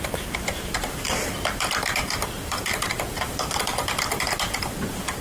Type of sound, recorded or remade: remade